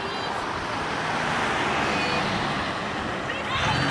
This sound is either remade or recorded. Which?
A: recorded